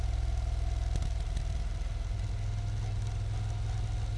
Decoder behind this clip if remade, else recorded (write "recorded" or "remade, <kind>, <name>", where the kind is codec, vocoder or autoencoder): recorded